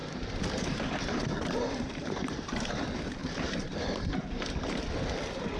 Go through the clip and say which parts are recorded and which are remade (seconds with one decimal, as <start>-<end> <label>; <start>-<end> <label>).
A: 0.0-2.7 remade; 2.7-3.2 recorded; 3.2-3.7 remade; 3.7-5.6 recorded